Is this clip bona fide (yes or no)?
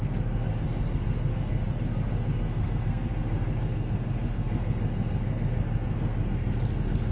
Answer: no